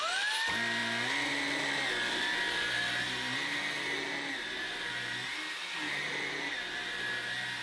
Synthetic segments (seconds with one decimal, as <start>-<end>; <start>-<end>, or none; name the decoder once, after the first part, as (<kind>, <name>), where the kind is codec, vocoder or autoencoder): none